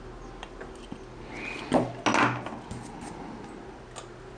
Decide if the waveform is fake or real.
real